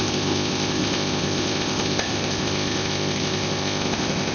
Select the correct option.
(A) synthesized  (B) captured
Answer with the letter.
A